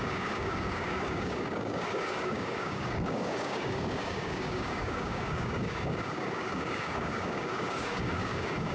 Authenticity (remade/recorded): remade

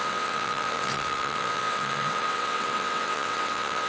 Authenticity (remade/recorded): remade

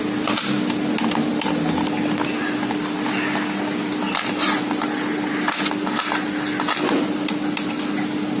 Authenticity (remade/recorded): recorded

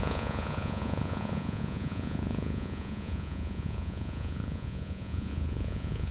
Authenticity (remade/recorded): remade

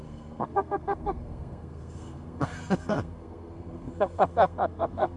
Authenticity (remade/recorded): remade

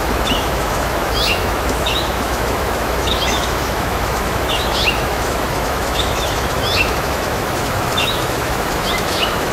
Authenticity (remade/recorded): remade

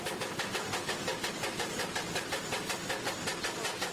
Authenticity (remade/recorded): recorded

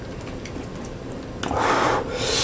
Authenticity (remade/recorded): recorded